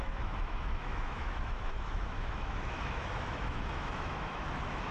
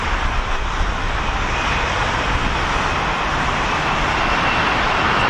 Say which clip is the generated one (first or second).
first